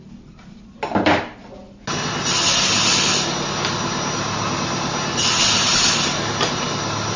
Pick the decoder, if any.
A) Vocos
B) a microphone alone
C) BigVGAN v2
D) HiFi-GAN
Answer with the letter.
B